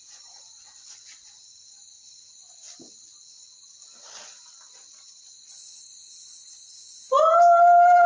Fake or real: real